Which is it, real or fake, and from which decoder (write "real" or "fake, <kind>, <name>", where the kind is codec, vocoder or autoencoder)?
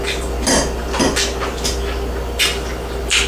real